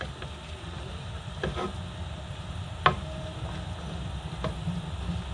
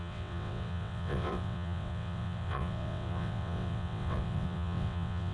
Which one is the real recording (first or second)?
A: first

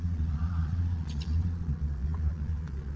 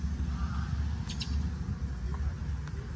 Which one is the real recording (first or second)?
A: second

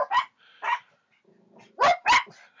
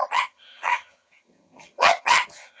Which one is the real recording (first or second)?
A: first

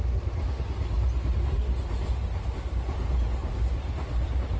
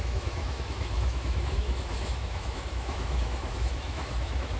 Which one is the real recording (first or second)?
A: first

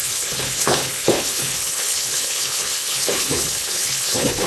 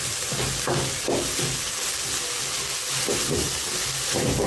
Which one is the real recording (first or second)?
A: second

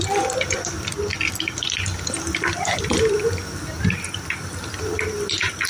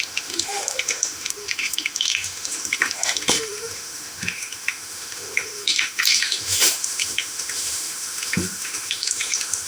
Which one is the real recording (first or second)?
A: first